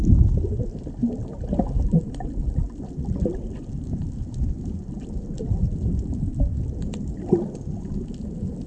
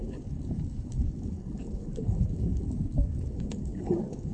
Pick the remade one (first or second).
second